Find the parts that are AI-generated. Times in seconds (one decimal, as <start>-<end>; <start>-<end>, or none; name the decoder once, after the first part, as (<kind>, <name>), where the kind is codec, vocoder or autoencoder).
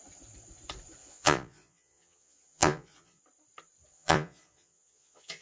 1.0-3.2 (vocoder, Vocos); 3.9-5.4